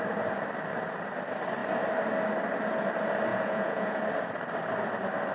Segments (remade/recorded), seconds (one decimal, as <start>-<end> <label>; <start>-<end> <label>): 0.0-3.3 recorded; 3.3-4.0 remade; 4.0-5.3 recorded